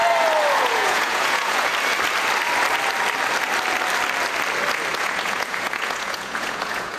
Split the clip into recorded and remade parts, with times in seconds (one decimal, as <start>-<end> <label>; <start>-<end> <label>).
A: 0.0-0.6 recorded; 0.6-1.7 remade; 1.7-5.0 recorded; 5.0-7.0 remade